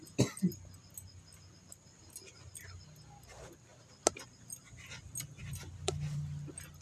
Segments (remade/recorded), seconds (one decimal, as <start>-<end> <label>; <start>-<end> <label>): 0.0-6.8 recorded